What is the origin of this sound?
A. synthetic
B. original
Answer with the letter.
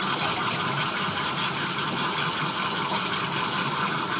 B